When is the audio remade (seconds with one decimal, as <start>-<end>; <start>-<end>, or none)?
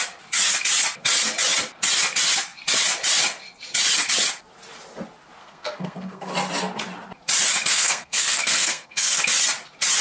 5.4-6.3; 7.7-9.2